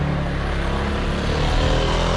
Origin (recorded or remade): recorded